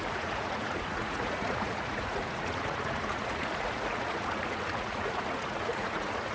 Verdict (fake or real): fake